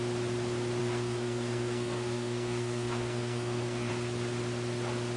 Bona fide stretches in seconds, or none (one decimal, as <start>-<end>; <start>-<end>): 0.0-0.8; 3.9-5.2